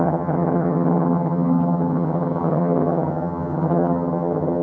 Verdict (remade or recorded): remade